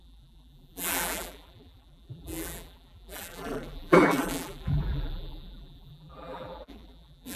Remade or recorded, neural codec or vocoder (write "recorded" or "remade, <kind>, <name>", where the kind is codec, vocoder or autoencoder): remade, vocoder, BigVGAN v2